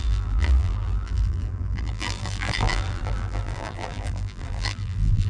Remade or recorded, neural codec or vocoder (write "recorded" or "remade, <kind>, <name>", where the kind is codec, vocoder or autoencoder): remade, vocoder, BigVGAN v2